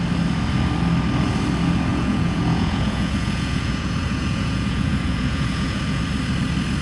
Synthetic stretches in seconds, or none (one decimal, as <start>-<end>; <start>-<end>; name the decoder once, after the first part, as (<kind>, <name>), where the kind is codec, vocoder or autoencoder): 1.9-6.0 (vocoder, Vocos)